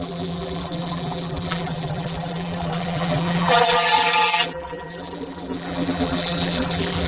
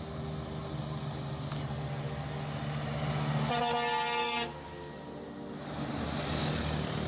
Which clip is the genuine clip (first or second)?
second